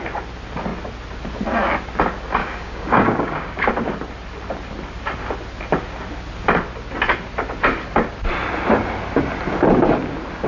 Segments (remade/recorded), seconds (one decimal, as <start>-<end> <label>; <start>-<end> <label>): 0.0-2.4 recorded; 2.4-3.7 remade; 3.7-10.5 recorded